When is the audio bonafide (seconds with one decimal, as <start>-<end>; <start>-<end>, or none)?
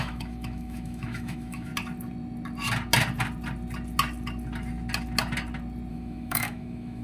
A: 1.7-5.9